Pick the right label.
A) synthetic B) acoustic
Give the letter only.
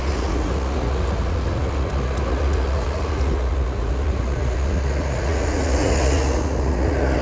A